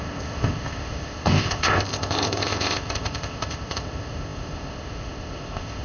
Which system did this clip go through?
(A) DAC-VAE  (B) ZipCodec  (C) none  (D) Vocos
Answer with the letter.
B